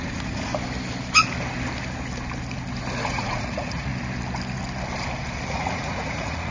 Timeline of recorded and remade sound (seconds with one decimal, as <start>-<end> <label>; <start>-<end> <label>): 0.0-0.5 remade; 0.5-3.0 recorded; 3.0-3.9 remade; 3.9-5.5 recorded; 5.5-6.5 remade

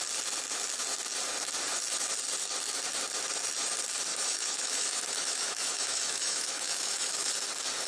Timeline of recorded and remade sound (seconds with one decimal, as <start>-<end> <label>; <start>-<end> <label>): 0.0-4.1 recorded; 4.1-7.3 remade; 7.3-7.9 recorded

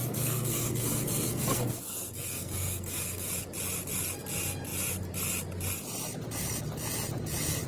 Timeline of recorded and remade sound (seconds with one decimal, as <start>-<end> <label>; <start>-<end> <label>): 0.0-3.3 remade; 3.3-7.7 recorded

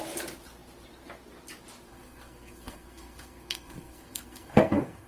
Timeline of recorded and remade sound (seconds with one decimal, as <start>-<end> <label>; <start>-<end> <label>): 0.0-1.9 recorded; 1.9-5.1 remade

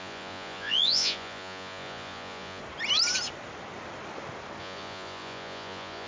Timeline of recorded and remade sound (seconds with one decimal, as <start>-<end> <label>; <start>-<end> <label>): 0.0-2.6 remade; 2.6-4.6 recorded; 4.6-6.1 remade

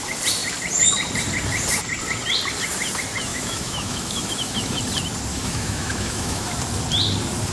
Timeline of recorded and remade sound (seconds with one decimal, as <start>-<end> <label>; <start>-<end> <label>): 0.0-3.3 recorded; 3.3-4.8 remade; 4.8-5.3 recorded; 5.3-6.6 remade; 6.6-7.5 recorded